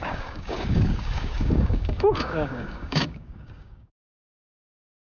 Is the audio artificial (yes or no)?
yes